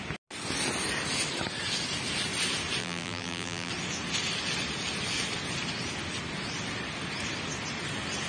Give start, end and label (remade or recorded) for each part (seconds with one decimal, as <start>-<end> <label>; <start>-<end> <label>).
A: 0.0-2.8 recorded; 2.8-3.7 remade; 3.7-8.3 recorded